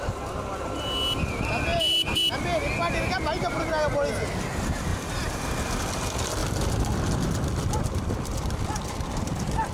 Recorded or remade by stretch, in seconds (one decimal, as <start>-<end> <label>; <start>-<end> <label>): 0.0-1.7 recorded; 1.7-2.3 remade; 2.3-4.9 recorded; 4.9-5.8 remade; 5.8-6.4 recorded; 6.4-9.7 remade